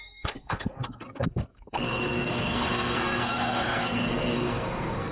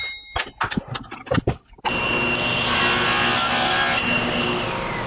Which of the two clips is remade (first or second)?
first